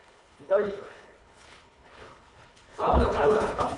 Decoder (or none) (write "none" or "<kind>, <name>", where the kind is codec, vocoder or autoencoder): codec, HILCodec